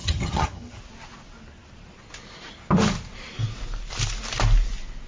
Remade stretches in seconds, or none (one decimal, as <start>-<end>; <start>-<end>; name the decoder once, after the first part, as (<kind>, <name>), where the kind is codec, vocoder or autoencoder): 0.0-0.8 (vocoder, HiFi-GAN)